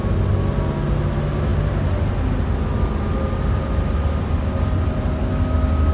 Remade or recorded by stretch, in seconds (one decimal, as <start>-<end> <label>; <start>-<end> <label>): 0.0-5.9 recorded